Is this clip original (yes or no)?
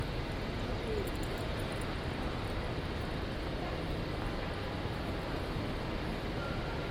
yes